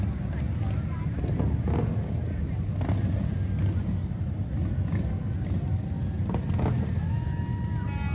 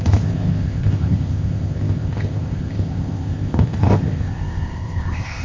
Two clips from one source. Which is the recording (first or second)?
first